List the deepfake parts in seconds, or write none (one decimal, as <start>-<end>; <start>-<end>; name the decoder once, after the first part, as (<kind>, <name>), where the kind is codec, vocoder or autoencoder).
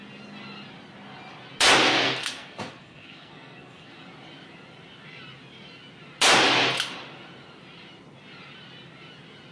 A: 1.9-3.9 (codec, SNAC)